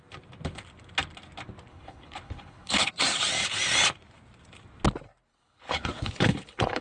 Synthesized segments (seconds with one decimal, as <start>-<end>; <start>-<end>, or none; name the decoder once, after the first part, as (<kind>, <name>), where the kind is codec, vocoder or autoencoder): 1.7-2.9 (codec, HILCodec); 5.3-6.8